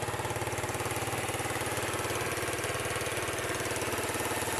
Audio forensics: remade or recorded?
recorded